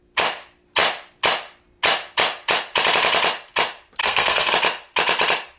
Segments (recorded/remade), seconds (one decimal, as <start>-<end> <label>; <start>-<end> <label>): 0.0-4.0 recorded; 4.0-4.5 remade; 4.5-5.6 recorded